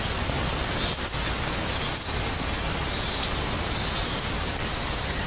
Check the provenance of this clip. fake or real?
real